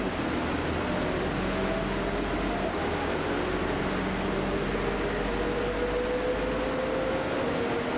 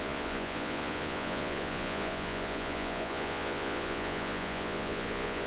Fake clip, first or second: second